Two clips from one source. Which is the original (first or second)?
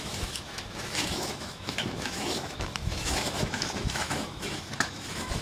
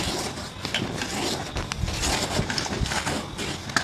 second